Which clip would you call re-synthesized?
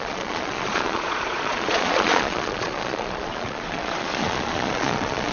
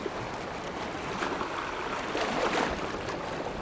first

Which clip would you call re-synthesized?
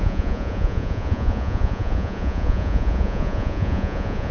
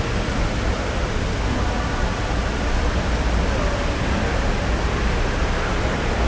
first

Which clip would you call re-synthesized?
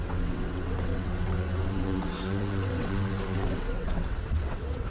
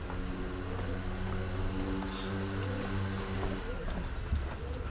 first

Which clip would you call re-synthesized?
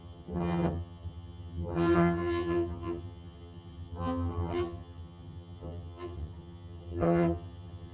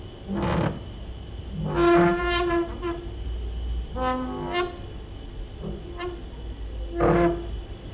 first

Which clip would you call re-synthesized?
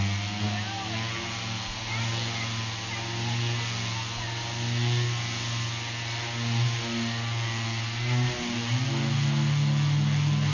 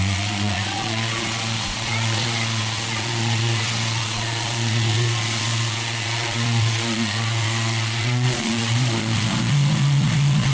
second